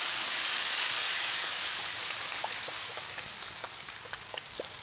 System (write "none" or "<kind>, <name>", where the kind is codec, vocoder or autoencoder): codec, DAC